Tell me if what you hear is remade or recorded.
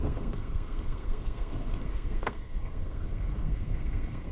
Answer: remade